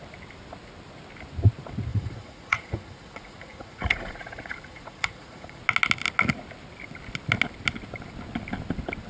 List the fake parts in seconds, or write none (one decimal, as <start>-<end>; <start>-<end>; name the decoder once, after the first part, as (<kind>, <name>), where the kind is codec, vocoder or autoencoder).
1.9-5.6 (vocoder, Vocos)

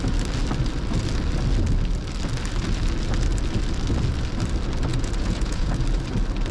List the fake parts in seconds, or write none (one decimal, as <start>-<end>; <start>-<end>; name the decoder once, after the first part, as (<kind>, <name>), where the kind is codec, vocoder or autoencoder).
4.9-5.7 (vocoder, Vocos)

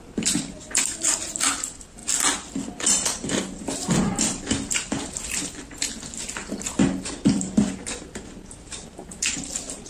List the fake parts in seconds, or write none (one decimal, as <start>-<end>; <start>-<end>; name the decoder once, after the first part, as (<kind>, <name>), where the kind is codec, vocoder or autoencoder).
0.0-2.0 (vocoder, BigVGAN v2); 2.7-9.9